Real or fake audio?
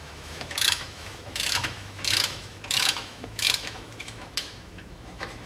fake